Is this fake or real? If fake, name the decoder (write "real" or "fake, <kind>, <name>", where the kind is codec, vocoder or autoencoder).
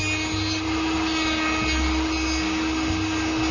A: real